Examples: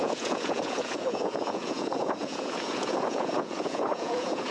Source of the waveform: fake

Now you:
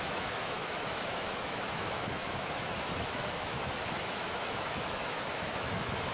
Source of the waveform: fake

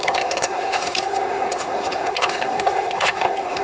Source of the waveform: fake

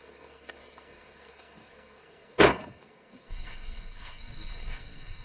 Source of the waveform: fake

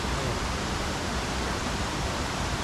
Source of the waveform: fake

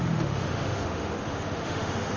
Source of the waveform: fake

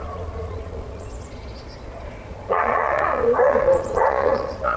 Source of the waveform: fake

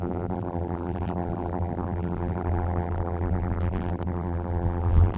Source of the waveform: fake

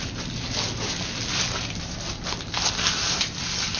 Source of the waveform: real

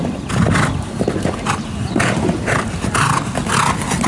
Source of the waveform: real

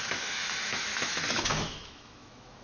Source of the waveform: fake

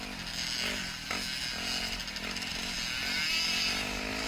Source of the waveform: real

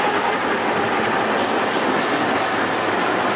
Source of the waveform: real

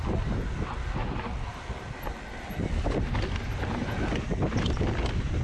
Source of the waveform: real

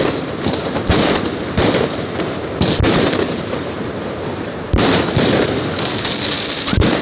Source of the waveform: fake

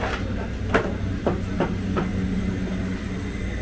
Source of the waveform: real